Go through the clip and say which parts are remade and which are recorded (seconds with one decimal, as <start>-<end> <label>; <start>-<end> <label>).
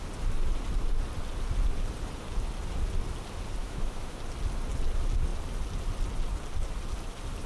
0.0-3.6 recorded; 3.6-4.2 remade; 4.2-7.5 recorded